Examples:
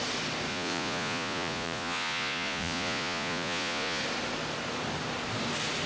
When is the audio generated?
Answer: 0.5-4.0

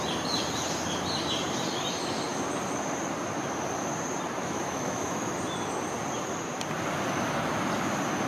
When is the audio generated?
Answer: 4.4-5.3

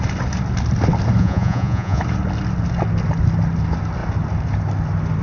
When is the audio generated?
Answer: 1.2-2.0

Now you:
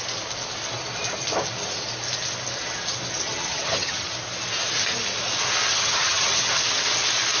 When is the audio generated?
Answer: 3.3-4.1; 5.7-6.6

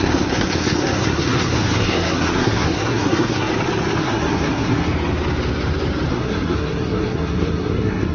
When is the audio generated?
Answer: 0.0-3.5; 4.0-4.9; 6.1-8.1

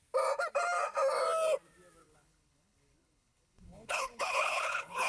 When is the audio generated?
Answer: 2.0-5.1